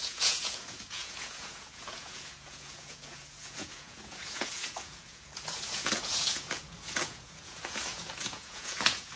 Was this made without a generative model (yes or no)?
no